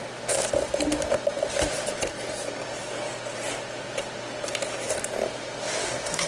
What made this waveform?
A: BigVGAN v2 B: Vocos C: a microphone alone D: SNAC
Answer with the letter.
C